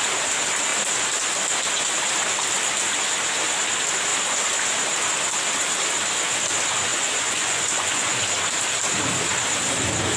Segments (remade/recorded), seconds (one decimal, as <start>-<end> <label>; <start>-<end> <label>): 0.0-6.9 recorded; 6.9-8.2 remade; 8.2-10.2 recorded

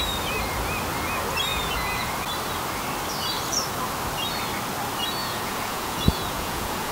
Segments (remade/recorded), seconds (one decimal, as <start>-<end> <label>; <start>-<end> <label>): 0.0-1.5 recorded; 1.5-2.1 remade; 2.1-5.2 recorded; 5.2-6.9 remade

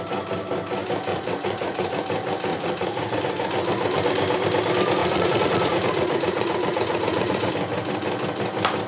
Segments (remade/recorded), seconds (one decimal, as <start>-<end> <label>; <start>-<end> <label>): 0.0-1.1 recorded; 1.1-1.9 remade; 1.9-2.5 recorded; 2.5-3.2 remade; 3.2-5.0 recorded; 5.0-7.5 remade; 7.5-8.9 recorded

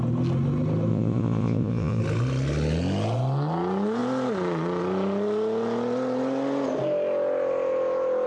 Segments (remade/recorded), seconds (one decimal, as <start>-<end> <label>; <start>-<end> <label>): 0.0-0.9 recorded; 0.9-2.0 remade; 2.0-8.3 recorded

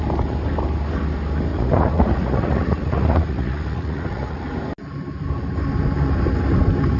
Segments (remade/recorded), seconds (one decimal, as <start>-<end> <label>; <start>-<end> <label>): 0.0-1.5 recorded; 1.5-4.5 remade; 4.5-7.0 recorded

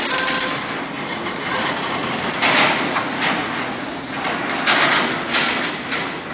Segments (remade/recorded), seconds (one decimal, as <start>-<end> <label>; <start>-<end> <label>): 0.0-1.1 recorded; 1.1-4.1 remade; 4.1-6.3 recorded

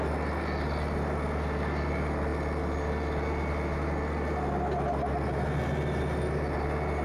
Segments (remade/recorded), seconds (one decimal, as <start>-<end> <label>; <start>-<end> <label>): 0.0-7.0 recorded